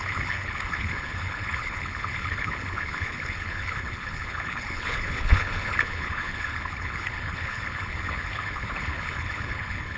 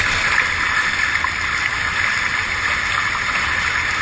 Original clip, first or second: second